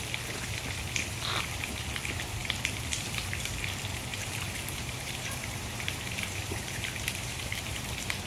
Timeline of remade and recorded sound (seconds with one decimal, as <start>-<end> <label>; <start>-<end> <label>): 0.0-4.1 recorded; 4.1-7.8 remade; 7.8-8.3 recorded